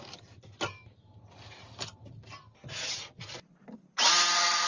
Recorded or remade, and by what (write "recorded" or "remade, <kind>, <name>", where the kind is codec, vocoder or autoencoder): recorded